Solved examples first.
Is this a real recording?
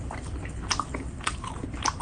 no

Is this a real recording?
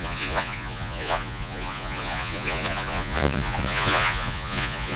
no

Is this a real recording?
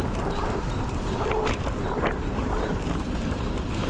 yes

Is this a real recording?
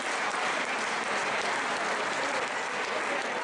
yes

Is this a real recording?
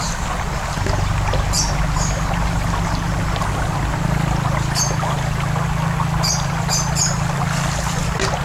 yes